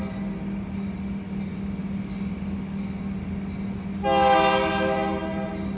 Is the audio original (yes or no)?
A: yes